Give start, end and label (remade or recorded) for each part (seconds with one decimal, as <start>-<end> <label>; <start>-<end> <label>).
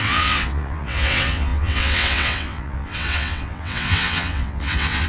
0.0-5.1 remade